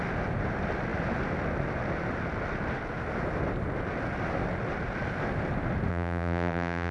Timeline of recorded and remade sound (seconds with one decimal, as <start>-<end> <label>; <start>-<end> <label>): 0.0-5.9 recorded; 5.9-6.9 remade